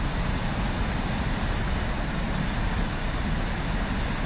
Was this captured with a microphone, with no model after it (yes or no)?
yes